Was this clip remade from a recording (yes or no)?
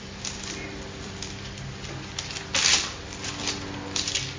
no